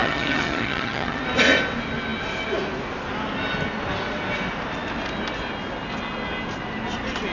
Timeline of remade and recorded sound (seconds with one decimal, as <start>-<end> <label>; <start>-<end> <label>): 0.0-1.2 remade; 1.2-7.3 recorded